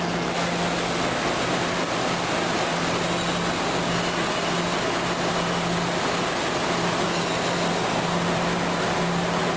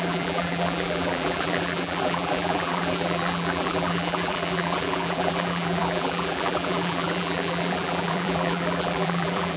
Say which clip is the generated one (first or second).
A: second